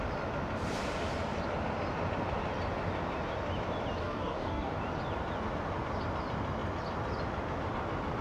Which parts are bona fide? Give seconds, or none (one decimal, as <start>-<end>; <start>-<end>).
0.0-4.0; 4.8-8.2